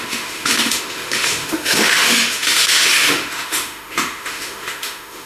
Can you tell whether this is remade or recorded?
remade